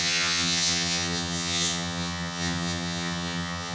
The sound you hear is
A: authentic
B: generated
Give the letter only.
B